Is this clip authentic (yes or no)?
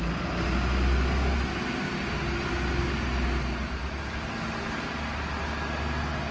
yes